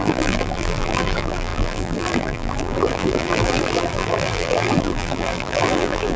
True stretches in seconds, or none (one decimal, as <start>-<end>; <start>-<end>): none